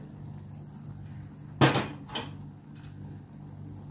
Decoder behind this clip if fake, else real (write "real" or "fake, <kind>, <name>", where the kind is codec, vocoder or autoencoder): real